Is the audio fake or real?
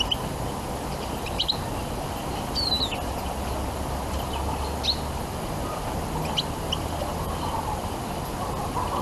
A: real